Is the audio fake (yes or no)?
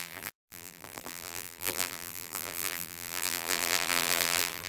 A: yes